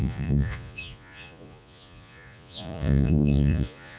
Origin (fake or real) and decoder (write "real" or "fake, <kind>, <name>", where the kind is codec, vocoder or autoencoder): fake, vocoder, Vocos